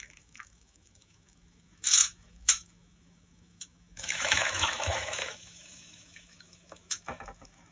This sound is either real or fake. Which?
fake